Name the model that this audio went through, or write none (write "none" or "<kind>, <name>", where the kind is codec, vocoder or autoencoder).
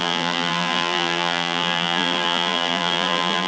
vocoder, BigVGAN v2